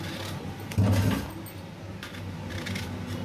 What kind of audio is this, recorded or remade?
recorded